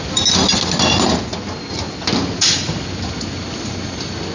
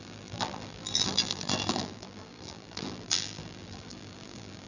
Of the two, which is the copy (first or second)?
second